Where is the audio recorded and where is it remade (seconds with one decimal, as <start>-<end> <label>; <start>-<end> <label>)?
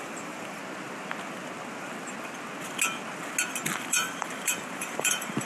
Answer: 0.0-0.6 remade; 0.6-3.9 recorded; 3.9-5.5 remade